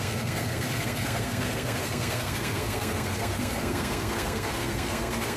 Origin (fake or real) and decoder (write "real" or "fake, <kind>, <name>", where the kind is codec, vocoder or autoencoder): fake, codec, SNAC